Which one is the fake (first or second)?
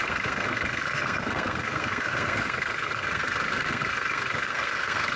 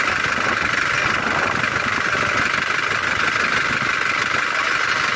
first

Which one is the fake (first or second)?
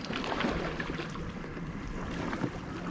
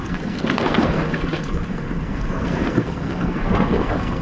second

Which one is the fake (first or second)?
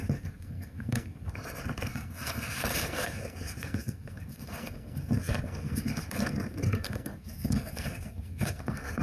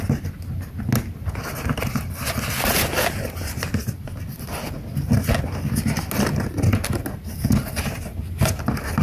first